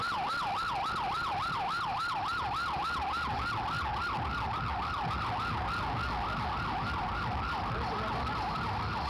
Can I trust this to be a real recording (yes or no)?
yes